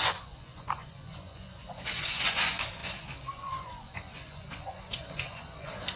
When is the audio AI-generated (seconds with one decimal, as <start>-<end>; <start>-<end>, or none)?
0.0-6.0